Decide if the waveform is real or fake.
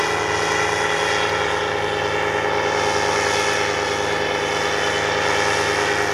real